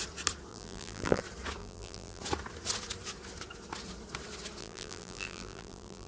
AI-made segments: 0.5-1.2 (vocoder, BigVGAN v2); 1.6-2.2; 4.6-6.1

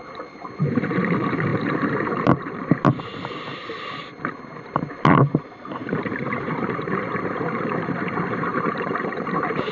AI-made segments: 0.0-9.7 (vocoder, BigVGAN v2)

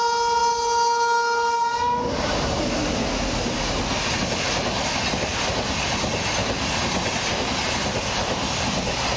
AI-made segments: 5.3-5.9 (vocoder, BigVGAN v2); 6.4-7.4

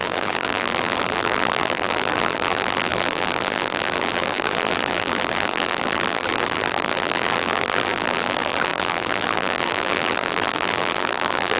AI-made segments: 0.0-11.6 (vocoder, BigVGAN v2)